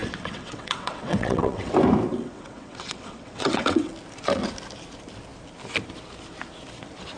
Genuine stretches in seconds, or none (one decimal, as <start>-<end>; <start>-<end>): 1.7-2.1; 3.9-7.2